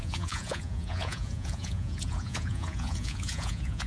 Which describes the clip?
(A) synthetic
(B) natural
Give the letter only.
A